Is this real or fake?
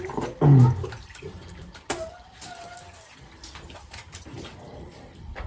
real